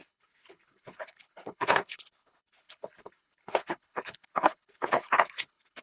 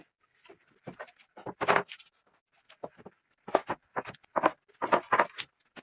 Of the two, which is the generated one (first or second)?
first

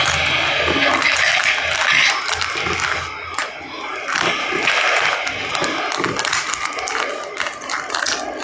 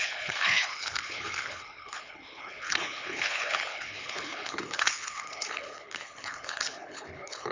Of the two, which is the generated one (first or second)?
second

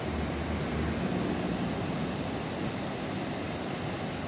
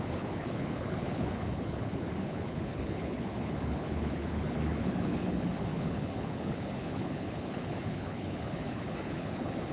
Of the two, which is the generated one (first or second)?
second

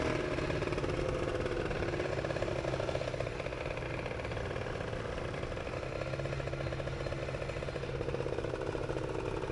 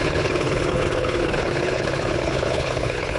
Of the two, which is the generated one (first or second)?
second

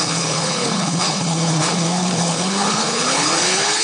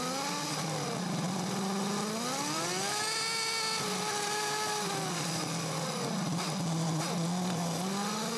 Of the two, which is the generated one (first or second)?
first